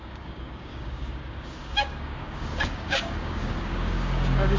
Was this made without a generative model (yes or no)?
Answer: no